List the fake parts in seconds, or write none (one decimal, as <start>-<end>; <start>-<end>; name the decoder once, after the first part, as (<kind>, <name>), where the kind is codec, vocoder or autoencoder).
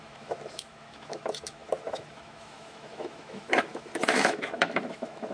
0.0-5.3 (autoencoder, DAC-VAE)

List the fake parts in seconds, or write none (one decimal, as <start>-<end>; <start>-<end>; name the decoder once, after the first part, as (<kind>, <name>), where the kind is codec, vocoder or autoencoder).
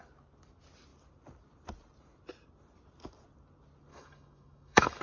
3.9-5.0 (autoencoder, DAC-VAE)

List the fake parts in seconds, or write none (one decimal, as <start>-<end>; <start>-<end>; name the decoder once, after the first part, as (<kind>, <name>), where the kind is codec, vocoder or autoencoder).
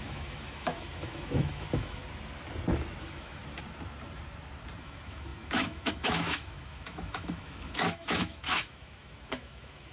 0.0-2.0 (autoencoder, DAC-VAE); 3.0-3.4; 4.8-9.9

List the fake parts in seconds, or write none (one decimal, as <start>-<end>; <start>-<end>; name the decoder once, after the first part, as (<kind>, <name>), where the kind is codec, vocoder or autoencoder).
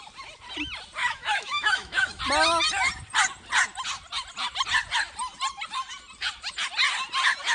1.0-2.2 (autoencoder, DAC-VAE)